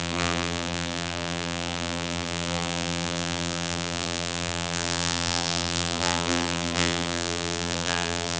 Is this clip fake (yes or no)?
yes